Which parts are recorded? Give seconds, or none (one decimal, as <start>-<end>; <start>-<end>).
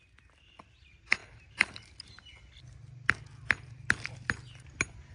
0.0-5.1